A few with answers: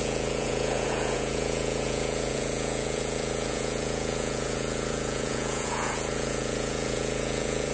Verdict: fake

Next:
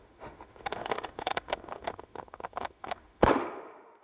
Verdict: fake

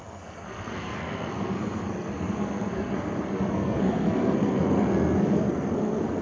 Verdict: fake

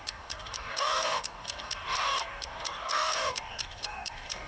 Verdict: fake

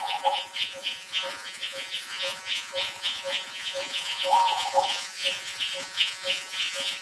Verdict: fake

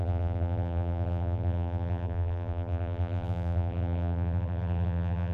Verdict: fake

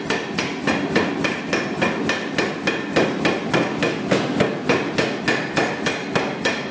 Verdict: real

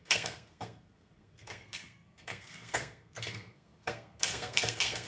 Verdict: fake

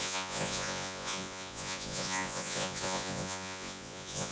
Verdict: fake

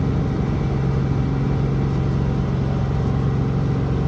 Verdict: real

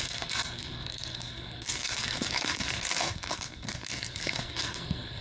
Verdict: fake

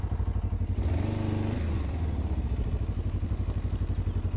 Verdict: real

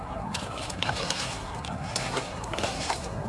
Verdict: fake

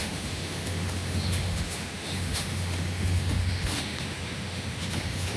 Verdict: fake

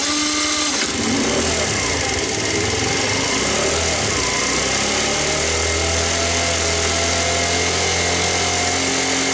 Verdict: real